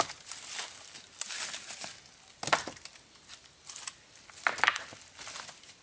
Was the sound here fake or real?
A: real